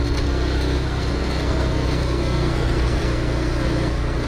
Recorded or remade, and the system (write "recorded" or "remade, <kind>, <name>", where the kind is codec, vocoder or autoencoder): remade, codec, SNAC